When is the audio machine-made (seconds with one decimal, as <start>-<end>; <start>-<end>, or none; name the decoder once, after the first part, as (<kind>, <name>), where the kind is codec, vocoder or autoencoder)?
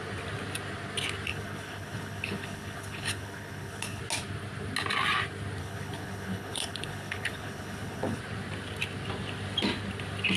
1.3-4.0 (codec, HILCodec); 5.6-8.2